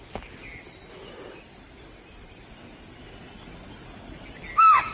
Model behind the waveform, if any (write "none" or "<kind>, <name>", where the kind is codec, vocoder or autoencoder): none